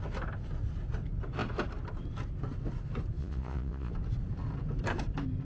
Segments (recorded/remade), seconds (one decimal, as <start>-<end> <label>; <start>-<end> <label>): 0.0-3.2 recorded; 3.2-3.9 remade; 3.9-5.4 recorded